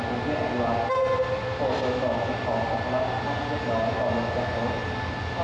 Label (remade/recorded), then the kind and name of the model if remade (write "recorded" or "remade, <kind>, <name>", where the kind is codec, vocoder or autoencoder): recorded